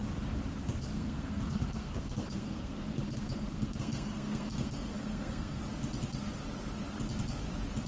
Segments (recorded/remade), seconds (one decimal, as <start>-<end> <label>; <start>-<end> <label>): 0.0-0.9 recorded; 0.9-5.6 remade; 5.6-7.9 recorded